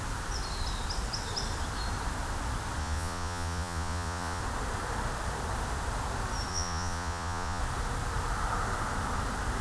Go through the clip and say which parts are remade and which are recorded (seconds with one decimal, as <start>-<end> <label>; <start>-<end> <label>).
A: 0.0-2.8 recorded; 2.8-4.4 remade; 4.4-6.5 recorded; 6.5-7.6 remade; 7.6-9.6 recorded